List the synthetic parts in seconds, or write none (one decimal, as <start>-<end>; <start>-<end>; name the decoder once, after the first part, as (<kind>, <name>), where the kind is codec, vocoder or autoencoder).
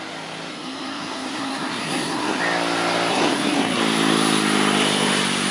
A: 0.5-2.4 (codec, SNAC); 3.1-3.8